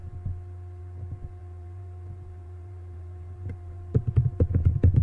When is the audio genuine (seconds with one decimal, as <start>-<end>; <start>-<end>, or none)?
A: 0.0-1.4; 4.4-5.0

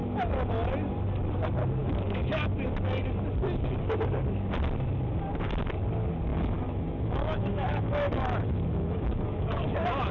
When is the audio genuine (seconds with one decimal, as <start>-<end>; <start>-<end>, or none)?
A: 0.5-1.8; 2.4-6.3; 9.6-10.1

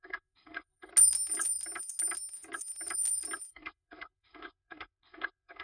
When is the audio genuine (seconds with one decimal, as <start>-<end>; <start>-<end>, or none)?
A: 0.9-3.5

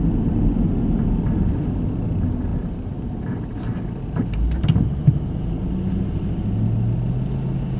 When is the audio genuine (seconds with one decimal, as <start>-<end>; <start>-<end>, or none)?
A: 0.0-7.8

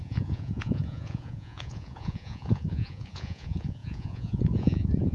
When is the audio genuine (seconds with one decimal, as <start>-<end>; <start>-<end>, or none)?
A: none

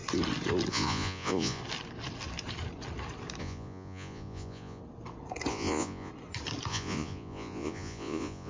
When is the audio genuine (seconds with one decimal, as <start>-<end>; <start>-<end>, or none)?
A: 0.0-0.7; 1.6-3.4; 4.8-5.5; 6.1-6.7

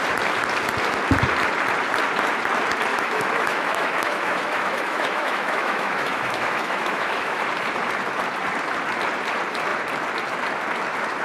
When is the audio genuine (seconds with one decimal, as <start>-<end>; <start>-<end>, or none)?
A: 0.0-2.9; 7.4-11.2